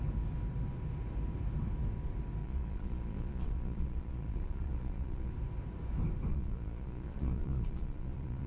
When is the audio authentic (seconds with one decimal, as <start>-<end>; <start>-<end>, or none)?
0.0-2.4; 5.3-6.3